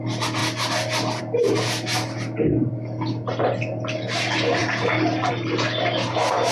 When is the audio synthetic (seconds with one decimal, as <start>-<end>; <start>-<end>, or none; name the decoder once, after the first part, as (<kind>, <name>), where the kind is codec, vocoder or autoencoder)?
none